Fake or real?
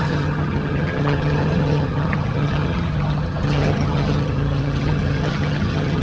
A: fake